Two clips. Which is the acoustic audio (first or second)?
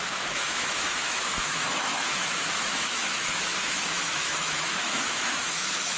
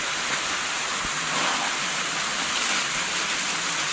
second